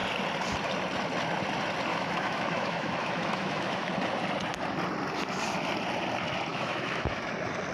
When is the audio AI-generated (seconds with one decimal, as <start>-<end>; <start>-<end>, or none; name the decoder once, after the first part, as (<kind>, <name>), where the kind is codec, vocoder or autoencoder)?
1.9-3.9 (autoencoder, DAC-VAE); 6.5-7.3